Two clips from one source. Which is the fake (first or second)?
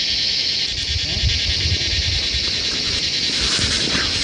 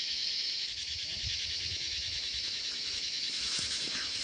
second